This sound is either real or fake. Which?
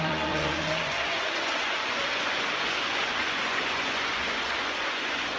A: fake